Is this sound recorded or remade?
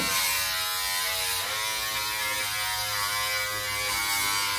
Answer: recorded